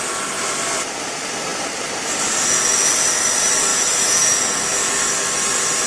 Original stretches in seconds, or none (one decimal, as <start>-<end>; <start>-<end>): 0.0-5.9